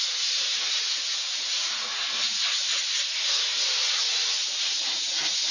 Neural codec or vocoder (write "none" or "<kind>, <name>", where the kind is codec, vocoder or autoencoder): none